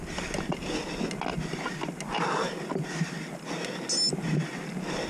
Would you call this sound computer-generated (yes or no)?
no